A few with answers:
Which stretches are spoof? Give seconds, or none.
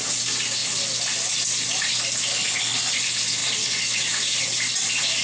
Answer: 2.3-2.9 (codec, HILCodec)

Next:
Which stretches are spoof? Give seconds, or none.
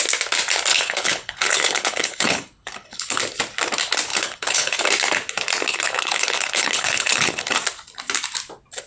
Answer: 0.7-3.2 (codec, HILCodec); 4.1-4.8; 5.7-7.6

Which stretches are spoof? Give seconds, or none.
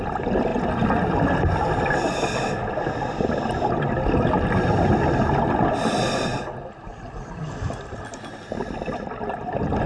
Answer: none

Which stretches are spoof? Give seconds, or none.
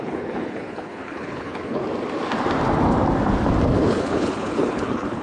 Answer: 0.0-1.8 (codec, HILCodec); 3.8-5.2